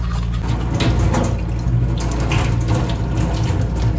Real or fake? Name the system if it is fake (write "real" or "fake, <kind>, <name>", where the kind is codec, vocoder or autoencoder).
real